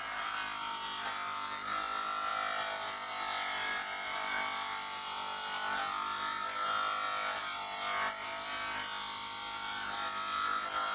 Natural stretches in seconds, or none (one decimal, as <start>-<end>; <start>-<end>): 0.0-10.9